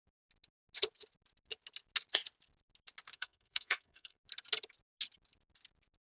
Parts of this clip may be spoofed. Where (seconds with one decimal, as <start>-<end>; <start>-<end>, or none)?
3.1-4.2